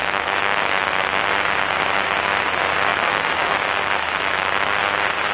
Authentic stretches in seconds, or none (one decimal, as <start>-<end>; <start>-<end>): 1.2-2.9; 4.8-5.3